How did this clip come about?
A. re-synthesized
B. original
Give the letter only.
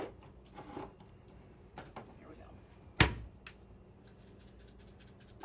B